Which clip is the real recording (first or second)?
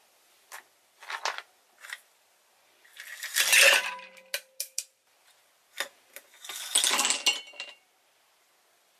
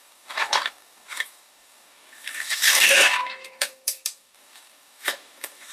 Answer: first